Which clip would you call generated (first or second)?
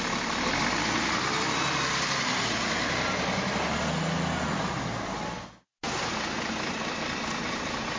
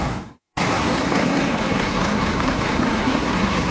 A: second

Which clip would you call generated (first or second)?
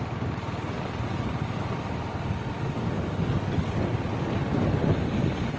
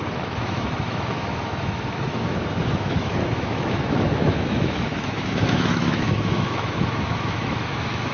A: second